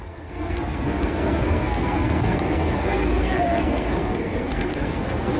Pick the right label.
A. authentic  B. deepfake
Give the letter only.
B